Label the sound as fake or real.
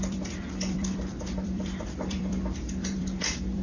fake